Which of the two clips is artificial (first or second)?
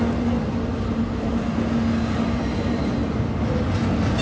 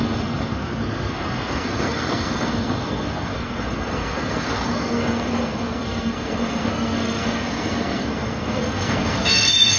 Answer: second